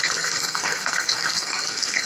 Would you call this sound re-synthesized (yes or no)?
yes